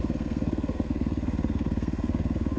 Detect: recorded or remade remade